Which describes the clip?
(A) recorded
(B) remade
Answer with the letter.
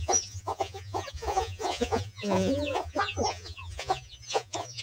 B